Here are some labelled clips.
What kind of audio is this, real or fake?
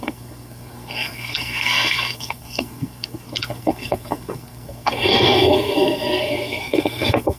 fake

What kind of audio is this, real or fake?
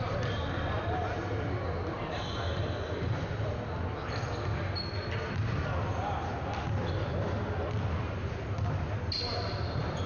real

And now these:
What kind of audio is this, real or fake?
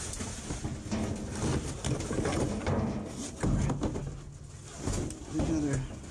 real